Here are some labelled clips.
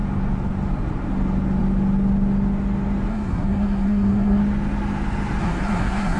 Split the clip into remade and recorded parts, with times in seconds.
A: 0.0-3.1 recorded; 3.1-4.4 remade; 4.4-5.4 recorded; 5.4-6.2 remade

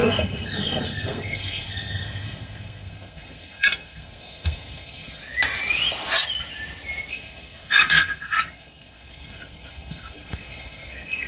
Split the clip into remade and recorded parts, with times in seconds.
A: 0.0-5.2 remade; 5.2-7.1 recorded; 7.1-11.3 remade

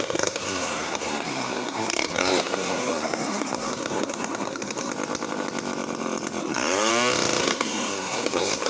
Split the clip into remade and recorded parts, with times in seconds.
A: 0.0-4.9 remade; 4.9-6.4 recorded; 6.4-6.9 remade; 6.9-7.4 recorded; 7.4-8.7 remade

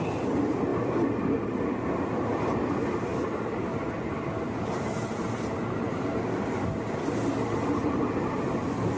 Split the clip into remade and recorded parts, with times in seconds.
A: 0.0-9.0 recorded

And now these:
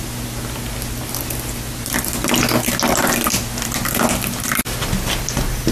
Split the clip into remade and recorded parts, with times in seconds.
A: 0.0-5.7 recorded